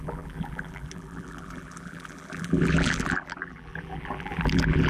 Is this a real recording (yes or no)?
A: no